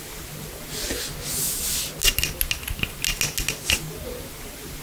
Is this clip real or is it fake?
real